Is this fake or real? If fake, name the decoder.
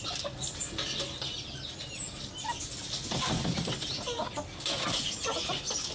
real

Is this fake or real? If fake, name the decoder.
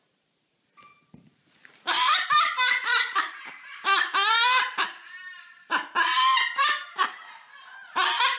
fake, vocoder, BigVGAN v2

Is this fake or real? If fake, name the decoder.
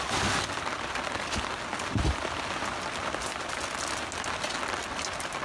real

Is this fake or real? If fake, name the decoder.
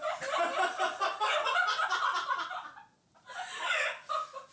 real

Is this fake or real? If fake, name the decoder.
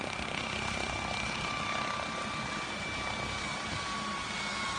real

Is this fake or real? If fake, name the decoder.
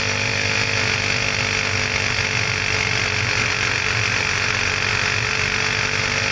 real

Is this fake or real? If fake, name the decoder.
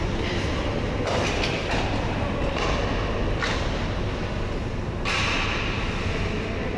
real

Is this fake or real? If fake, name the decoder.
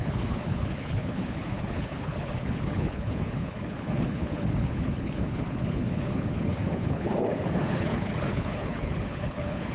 fake, codec, HILCodec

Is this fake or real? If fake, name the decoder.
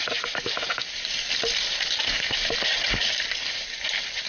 real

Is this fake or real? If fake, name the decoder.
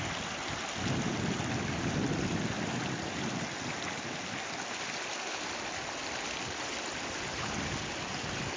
real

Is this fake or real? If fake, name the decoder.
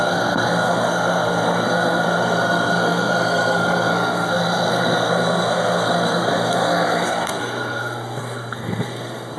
fake, codec, SNAC